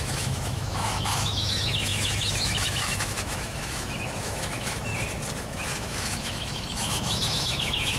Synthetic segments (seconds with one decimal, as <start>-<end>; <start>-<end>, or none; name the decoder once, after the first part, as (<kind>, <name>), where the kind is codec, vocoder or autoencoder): 0.0-4.9 (autoencoder, DAC-VAE); 5.4-8.0